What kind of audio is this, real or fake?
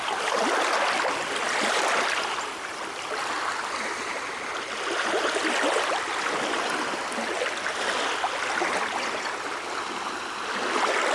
real